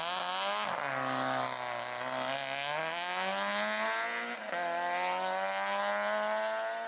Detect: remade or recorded recorded